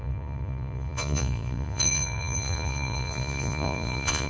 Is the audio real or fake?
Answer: fake